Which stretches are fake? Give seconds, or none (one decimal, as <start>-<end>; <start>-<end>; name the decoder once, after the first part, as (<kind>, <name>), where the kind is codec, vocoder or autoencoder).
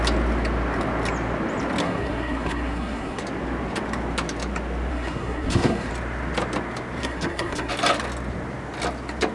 1.8-3.2 (codec, SNAC); 4.9-5.9; 7.0-7.7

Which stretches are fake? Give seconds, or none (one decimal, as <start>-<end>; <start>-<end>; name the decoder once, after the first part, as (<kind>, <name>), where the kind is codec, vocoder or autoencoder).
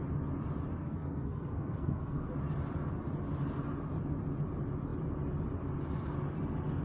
0.8-2.3 (codec, SNAC)